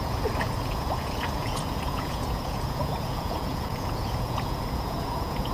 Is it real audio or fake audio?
fake